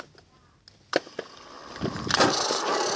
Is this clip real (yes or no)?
yes